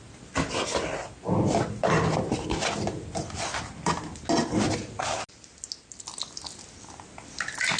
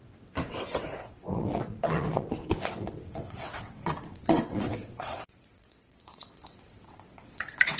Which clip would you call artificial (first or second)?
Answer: second